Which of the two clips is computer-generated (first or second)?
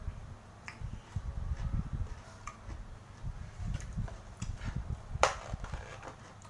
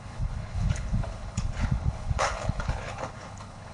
second